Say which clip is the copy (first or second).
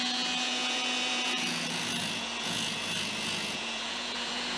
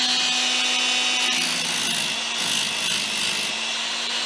first